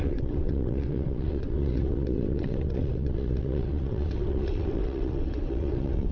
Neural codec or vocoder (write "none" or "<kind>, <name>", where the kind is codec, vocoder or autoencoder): vocoder, WaveNeXt